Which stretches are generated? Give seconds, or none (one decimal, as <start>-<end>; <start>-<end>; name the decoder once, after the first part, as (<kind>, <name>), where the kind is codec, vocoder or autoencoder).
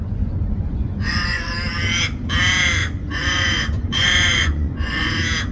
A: 0.0-1.5 (vocoder, Vocos); 2.8-5.1